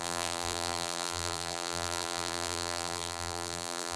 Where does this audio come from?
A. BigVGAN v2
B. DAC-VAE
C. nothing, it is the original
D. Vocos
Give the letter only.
A